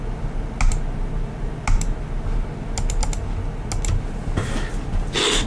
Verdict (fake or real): real